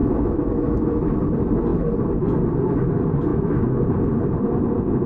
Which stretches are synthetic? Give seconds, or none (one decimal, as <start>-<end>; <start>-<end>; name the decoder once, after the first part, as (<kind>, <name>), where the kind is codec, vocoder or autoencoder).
0.0-1.1 (autoencoder, DAC-VAE); 3.3-3.9

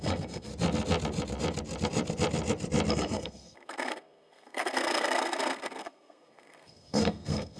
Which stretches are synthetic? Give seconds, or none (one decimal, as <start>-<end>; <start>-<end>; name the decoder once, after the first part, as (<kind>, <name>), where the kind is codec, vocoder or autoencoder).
0.0-0.5 (codec, SNAC); 2.9-7.6

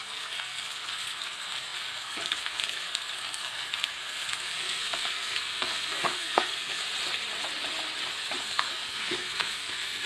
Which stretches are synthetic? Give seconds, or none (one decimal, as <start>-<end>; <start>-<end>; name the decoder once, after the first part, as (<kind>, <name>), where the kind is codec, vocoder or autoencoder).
0.0-6.8 (codec, SNAC); 8.4-10.1